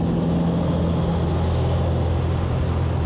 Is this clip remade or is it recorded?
recorded